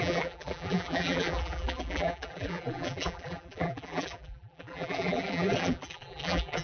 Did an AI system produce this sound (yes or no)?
yes